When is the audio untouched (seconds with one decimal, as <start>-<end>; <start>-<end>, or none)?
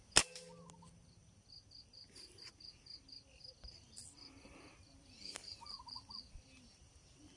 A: 0.0-7.4